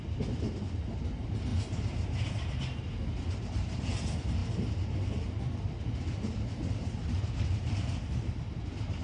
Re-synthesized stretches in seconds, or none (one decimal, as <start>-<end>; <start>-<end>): 0.0-9.0